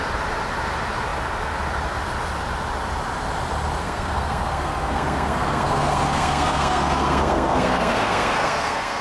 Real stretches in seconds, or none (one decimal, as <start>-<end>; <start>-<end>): 0.0-3.8